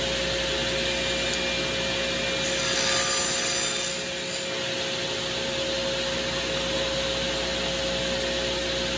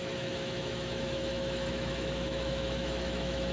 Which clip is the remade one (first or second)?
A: second